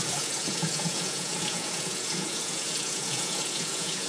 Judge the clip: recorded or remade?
remade